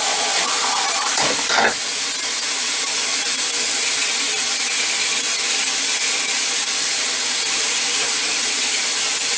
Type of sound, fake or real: real